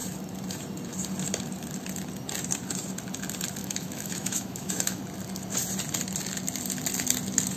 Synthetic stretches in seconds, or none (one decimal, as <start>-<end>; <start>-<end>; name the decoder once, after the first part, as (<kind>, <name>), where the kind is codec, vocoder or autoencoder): 3.6-5.0 (autoencoder, DAC-VAE)

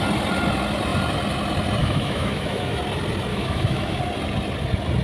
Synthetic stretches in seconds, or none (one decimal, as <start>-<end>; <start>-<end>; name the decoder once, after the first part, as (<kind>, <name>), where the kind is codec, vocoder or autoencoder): 1.8-2.8 (autoencoder, DAC-VAE); 3.3-4.0